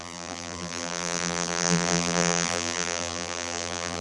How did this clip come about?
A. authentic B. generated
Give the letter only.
B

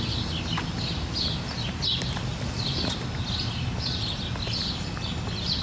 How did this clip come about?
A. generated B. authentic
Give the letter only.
B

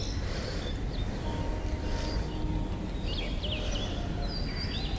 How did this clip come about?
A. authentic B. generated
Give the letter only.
A